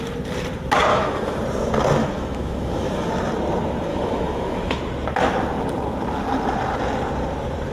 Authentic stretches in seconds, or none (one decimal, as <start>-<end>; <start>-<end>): 0.0-0.9; 1.4-2.0; 3.1-3.9; 4.8-7.7